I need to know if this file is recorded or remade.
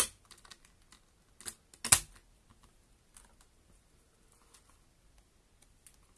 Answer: recorded